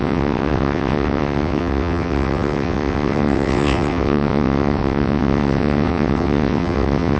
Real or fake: fake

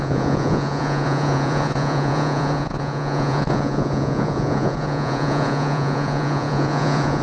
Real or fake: fake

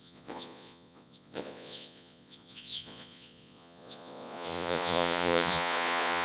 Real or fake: fake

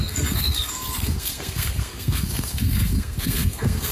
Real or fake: fake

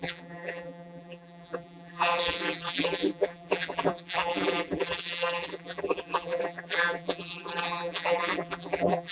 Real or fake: fake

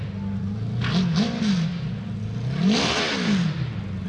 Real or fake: real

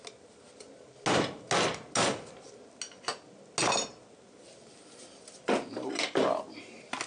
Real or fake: real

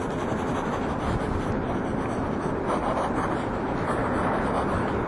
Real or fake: real